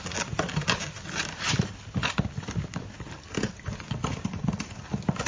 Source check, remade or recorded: recorded